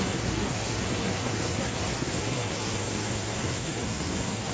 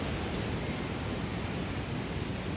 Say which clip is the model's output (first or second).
first